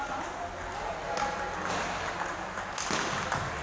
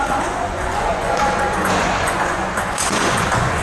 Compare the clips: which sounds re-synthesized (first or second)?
second